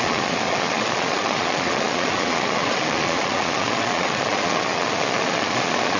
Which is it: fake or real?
fake